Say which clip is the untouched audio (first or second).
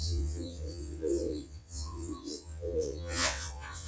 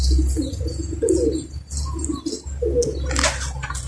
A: second